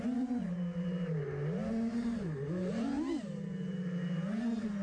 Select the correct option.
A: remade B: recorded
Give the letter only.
B